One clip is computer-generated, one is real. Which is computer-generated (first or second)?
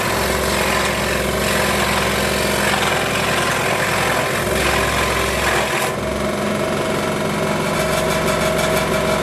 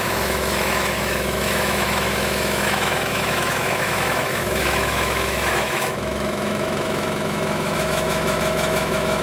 second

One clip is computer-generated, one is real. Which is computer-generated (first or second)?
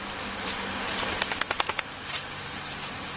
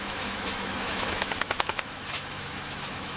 second